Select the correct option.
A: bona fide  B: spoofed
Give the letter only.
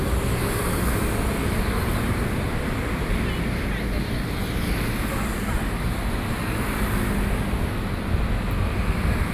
A